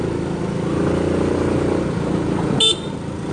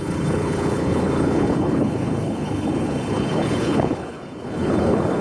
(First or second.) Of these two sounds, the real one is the first